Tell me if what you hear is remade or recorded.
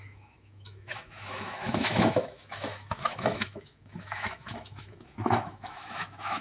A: remade